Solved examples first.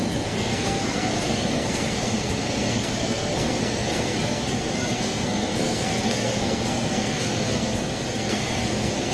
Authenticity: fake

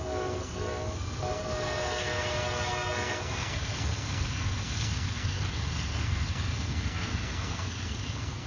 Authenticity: fake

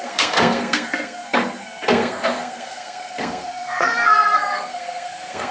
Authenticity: fake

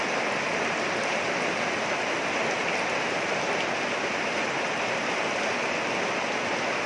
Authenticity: real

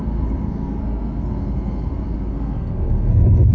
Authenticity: fake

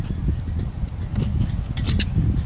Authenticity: real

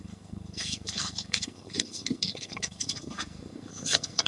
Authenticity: fake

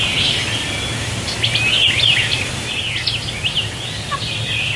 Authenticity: real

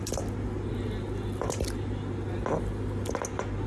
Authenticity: real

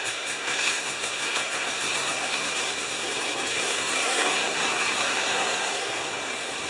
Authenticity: fake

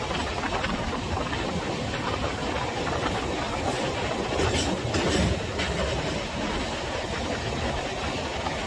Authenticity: real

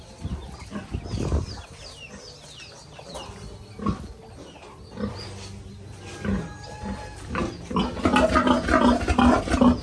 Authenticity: real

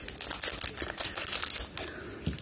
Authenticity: real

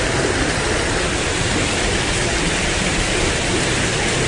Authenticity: real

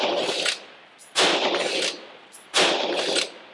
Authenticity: real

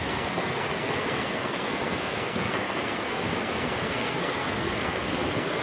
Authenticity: fake